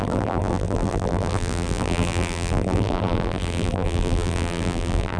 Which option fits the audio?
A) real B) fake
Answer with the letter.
B